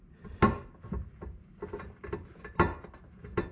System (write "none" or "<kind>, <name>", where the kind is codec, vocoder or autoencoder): none